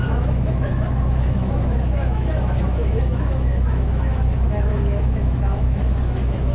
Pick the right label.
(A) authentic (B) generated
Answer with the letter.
B